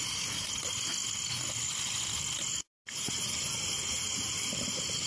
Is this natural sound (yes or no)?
yes